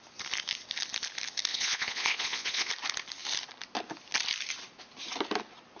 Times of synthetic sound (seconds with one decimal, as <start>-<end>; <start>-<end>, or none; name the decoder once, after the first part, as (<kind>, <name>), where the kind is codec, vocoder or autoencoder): 1.5-2.7 (vocoder, Vocos)